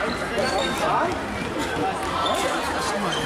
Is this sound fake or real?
real